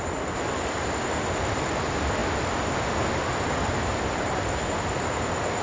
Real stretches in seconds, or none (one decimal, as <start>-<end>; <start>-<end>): 0.0-5.6